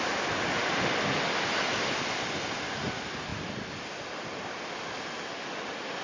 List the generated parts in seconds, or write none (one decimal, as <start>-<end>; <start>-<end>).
none